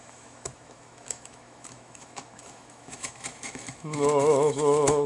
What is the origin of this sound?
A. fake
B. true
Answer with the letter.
A